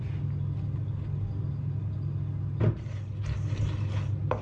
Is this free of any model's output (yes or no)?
yes